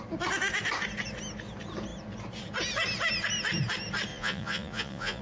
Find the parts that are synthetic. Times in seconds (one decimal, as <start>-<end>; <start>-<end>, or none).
4.1-5.2